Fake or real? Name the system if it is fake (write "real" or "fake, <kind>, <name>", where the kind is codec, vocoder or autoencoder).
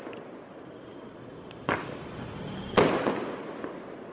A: real